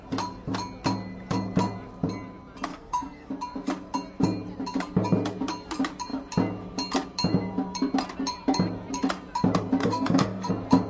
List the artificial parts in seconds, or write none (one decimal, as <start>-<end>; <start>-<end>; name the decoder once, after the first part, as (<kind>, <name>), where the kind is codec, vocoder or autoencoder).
2.7-3.3 (codec, SNAC); 9.8-10.5